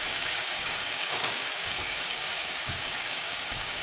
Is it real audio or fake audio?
fake